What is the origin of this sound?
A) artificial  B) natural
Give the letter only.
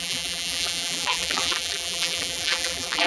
A